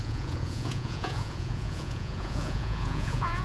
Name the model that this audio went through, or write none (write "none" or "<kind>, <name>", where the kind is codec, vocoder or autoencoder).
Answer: vocoder, Vocos